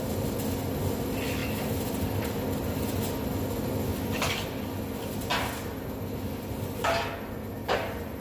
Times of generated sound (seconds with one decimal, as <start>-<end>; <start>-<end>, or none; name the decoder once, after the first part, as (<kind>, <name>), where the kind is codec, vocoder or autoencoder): 3.9-4.8 (vocoder, BigVGAN v2)